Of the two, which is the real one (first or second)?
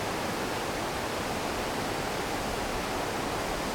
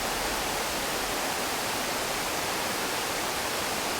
first